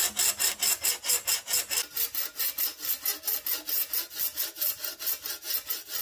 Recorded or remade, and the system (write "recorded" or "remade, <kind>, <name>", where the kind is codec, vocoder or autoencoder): recorded